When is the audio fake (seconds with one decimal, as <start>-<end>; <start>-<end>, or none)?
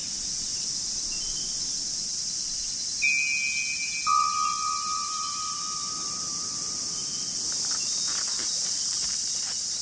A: 3.7-7.0; 8.3-9.8